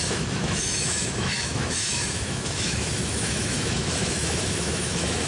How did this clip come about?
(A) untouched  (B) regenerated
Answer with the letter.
B